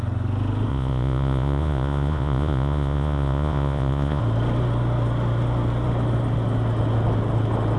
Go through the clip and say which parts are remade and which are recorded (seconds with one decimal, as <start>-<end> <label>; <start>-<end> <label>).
0.0-0.7 recorded; 0.7-4.2 remade; 4.2-7.8 recorded